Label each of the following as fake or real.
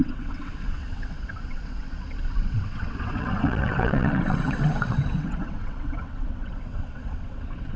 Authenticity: fake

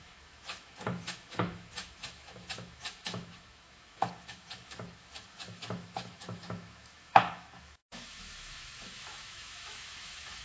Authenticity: fake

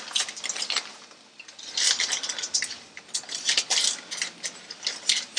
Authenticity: real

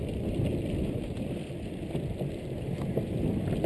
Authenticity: real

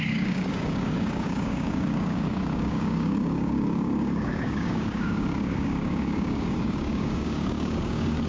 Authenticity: fake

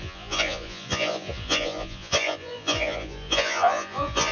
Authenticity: fake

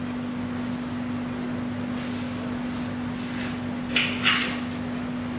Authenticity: real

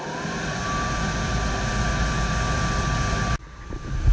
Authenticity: real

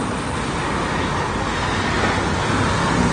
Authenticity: real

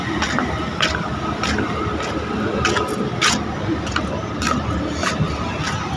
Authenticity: real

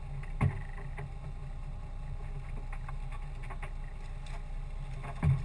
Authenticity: real